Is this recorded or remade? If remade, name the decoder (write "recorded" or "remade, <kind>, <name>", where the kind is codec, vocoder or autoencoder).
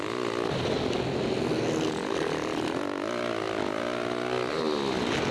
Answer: recorded